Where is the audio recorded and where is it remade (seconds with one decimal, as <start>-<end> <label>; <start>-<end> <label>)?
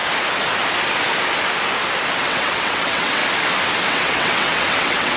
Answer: 0.0-2.2 recorded; 2.2-3.2 remade; 3.2-3.9 recorded; 3.9-5.2 remade